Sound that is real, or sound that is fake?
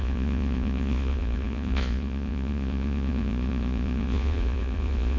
fake